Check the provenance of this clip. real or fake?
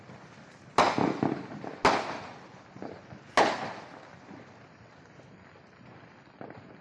real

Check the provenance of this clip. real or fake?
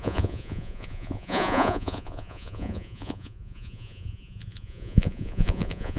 fake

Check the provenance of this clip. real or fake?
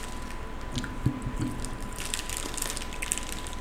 real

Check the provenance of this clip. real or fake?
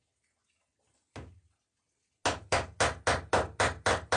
real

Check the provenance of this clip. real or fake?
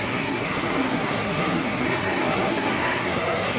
fake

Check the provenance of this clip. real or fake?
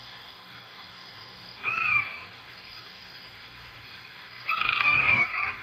fake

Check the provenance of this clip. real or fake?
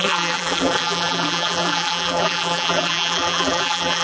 fake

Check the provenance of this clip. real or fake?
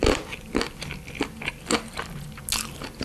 real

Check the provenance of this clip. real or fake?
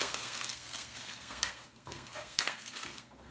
fake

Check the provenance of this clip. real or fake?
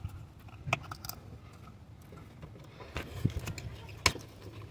real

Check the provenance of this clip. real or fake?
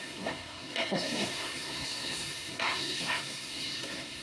fake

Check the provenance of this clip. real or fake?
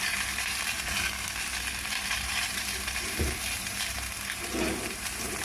fake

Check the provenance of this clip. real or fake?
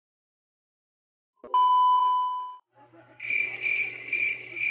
real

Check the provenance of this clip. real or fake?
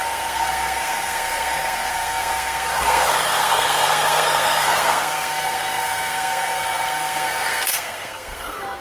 fake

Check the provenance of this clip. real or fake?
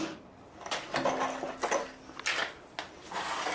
real